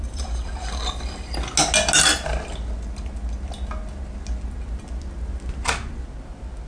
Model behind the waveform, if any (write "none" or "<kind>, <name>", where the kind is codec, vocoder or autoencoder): none